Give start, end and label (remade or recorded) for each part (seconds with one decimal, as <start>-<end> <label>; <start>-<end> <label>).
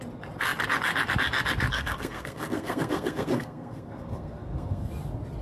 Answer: 0.0-1.7 recorded; 1.7-4.9 remade; 4.9-5.4 recorded